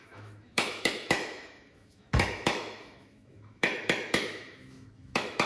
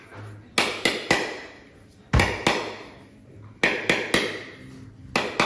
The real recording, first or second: second